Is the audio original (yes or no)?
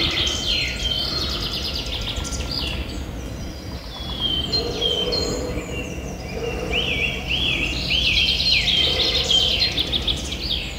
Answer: yes